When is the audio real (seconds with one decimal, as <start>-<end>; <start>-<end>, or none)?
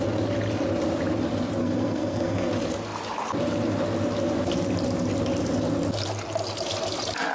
0.0-1.6; 2.5-7.3